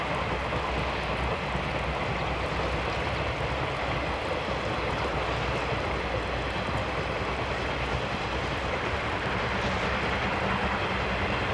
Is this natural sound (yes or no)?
yes